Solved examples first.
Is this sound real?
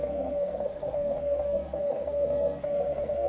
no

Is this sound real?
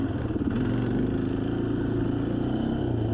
yes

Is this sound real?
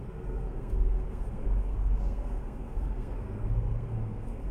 no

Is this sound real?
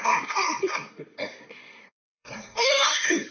no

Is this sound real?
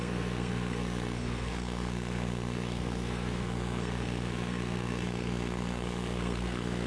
no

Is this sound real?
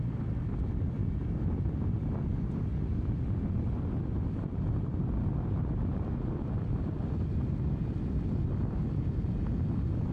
yes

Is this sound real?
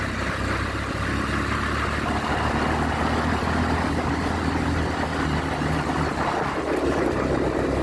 yes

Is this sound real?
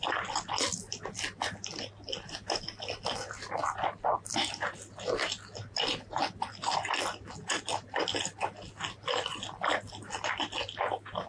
yes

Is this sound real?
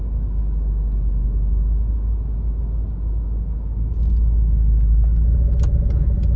yes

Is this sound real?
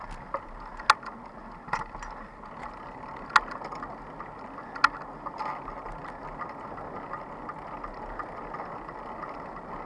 yes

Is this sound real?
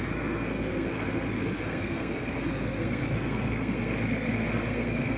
no